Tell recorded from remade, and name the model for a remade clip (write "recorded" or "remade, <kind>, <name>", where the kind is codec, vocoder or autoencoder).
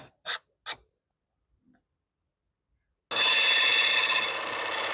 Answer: recorded